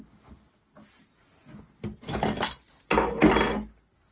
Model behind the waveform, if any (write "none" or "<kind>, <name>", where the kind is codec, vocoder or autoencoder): none